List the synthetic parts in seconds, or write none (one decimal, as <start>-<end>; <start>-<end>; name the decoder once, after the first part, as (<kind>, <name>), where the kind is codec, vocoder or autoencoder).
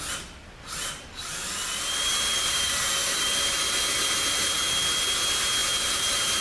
2.1-3.5 (vocoder, BigVGAN v2)